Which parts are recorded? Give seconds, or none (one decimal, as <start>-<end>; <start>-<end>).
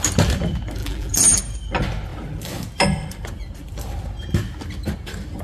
0.0-0.8; 1.4-5.4